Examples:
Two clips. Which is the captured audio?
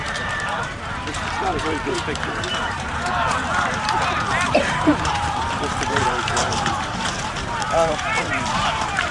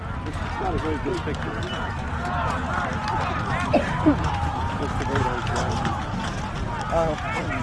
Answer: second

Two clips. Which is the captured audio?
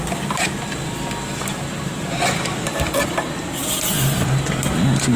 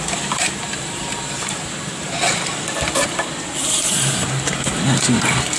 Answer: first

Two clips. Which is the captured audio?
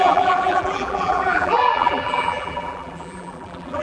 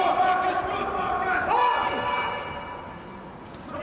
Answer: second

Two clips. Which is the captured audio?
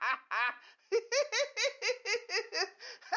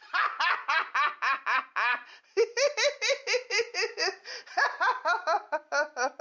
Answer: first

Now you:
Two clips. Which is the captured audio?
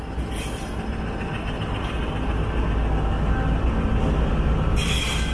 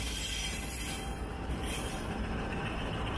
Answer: first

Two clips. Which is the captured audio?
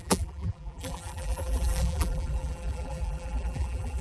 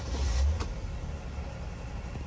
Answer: second